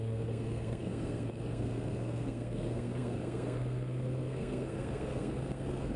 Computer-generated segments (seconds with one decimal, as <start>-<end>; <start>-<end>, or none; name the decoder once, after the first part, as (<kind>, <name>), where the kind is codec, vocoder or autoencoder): 0.0-6.0 (codec, SNAC)